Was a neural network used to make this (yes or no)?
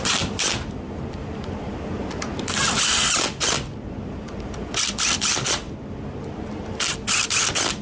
no